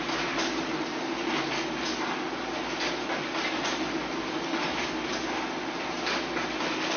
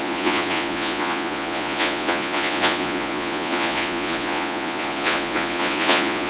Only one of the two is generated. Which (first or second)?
second